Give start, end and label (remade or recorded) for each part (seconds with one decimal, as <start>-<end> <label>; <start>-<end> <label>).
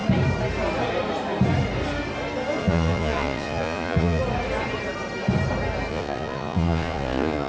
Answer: 0.0-2.6 recorded; 2.6-4.2 remade; 4.2-5.9 recorded; 5.9-7.5 remade